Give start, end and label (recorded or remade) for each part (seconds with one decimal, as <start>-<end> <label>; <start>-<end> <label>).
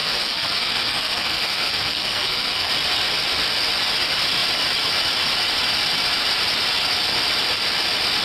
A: 0.0-2.7 remade; 2.7-8.2 recorded